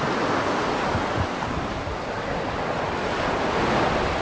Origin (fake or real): real